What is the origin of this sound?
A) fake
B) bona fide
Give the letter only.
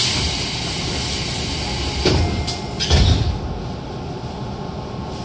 B